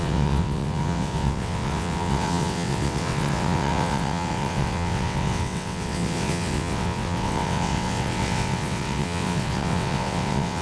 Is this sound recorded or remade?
remade